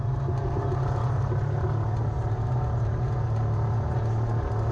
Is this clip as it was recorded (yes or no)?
yes